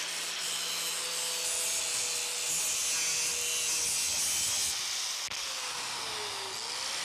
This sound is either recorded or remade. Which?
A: recorded